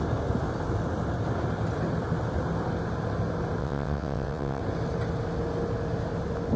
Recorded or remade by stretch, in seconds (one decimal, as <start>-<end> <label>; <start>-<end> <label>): 0.0-3.6 recorded; 3.6-4.6 remade; 4.6-6.6 recorded